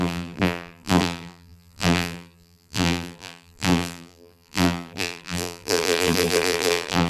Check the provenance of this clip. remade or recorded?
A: remade